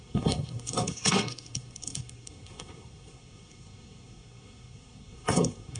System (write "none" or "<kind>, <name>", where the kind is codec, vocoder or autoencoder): codec, SNAC